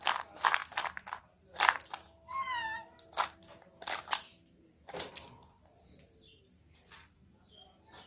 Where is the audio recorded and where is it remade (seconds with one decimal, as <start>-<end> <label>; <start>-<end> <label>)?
0.0-8.1 recorded